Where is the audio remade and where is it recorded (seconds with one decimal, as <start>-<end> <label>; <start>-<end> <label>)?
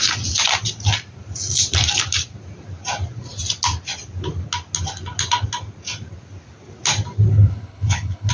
0.0-7.3 recorded; 7.3-8.3 remade